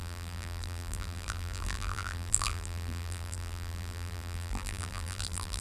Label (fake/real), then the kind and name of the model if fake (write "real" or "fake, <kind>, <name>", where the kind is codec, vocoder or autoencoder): fake, vocoder, BigVGAN v2